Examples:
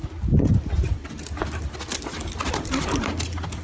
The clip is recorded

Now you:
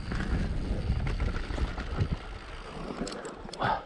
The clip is recorded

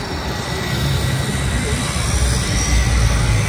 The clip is recorded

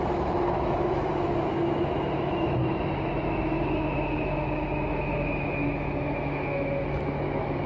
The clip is remade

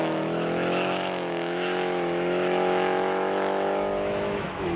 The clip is remade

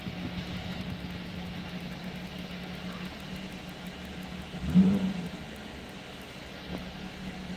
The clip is recorded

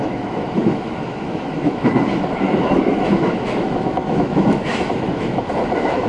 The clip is remade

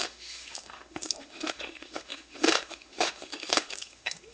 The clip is remade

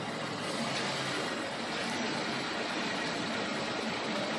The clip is recorded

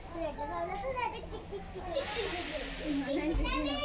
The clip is recorded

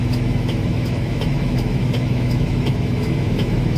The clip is remade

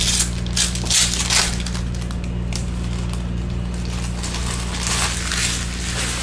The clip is recorded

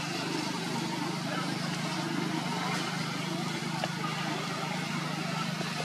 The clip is recorded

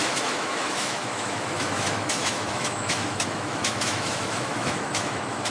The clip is remade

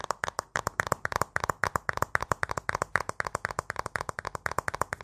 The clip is recorded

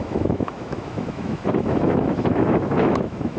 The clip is remade